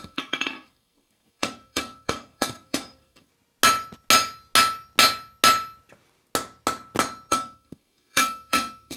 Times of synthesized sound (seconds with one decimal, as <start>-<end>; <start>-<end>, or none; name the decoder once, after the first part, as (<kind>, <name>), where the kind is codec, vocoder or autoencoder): 0.0-3.3 (codec, SNAC); 7.3-9.0